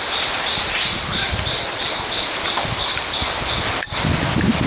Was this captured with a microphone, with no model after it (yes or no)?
yes